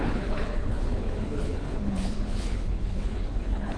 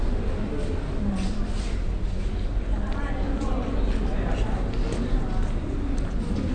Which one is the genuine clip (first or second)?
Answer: second